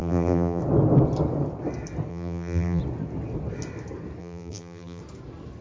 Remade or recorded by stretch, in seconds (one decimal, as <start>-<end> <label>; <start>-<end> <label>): 0.0-0.6 remade; 0.6-2.1 recorded; 2.1-2.8 remade; 2.8-4.2 recorded; 4.2-5.0 remade; 5.0-5.6 recorded